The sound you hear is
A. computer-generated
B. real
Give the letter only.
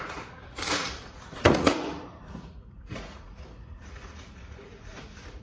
A